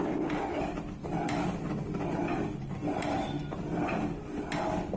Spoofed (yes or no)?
no